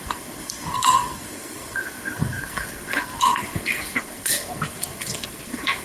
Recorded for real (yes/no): no